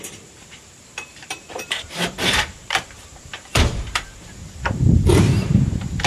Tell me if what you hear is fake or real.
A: fake